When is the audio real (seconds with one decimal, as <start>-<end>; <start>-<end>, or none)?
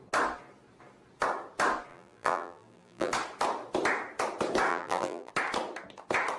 0.0-1.9; 3.1-4.7; 5.3-6.4